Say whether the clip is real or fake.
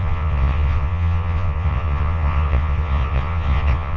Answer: fake